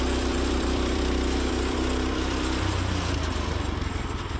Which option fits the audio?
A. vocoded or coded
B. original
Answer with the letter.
A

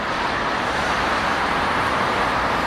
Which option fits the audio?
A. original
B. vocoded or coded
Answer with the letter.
B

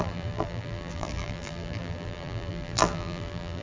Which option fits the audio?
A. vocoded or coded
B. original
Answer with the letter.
A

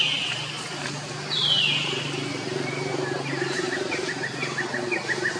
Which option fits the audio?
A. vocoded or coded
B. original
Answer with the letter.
A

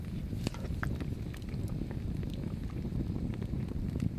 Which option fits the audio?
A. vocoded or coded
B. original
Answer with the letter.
B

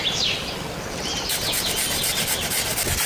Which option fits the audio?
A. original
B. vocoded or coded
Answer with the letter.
A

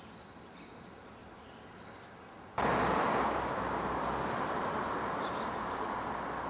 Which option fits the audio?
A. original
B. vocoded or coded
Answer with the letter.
A